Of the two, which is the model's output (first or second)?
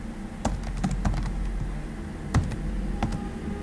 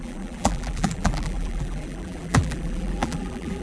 second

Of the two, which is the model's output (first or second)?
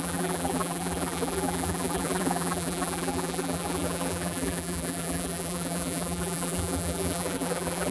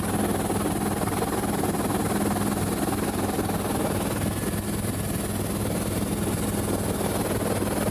first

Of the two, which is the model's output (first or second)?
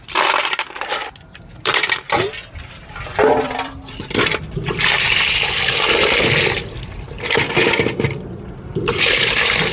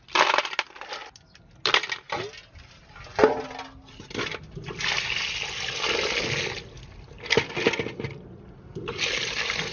first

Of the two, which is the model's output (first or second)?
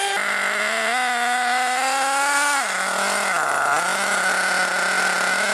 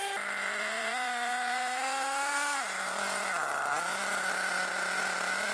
second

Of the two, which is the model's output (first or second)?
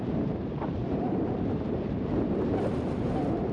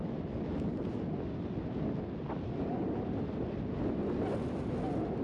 first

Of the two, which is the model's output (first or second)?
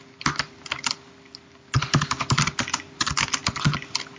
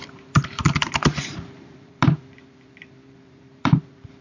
second